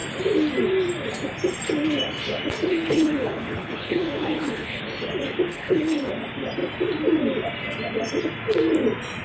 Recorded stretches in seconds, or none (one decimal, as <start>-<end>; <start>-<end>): 0.0-2.7; 4.8-5.5; 6.1-9.2